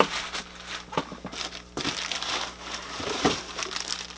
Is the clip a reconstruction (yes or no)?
no